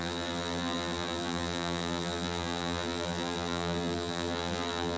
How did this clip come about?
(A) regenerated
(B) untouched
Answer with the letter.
A